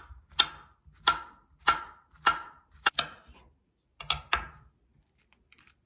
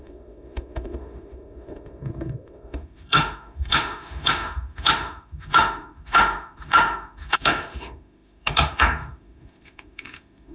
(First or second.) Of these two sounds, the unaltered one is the first